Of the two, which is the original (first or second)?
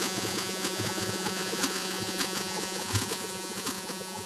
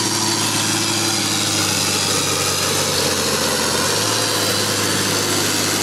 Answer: second